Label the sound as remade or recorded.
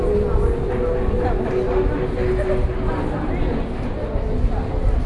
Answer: recorded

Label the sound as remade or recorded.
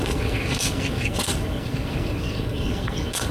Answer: remade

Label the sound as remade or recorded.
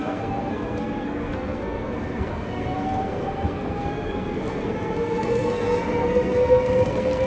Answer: remade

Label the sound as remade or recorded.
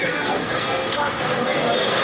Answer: remade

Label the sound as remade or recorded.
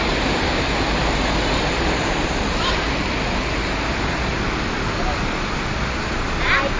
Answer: recorded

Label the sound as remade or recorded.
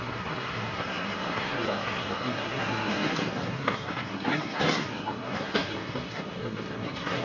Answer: remade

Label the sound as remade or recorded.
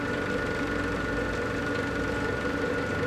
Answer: recorded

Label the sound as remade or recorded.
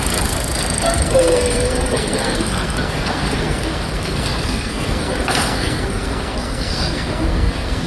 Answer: remade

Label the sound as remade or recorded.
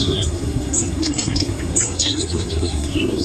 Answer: remade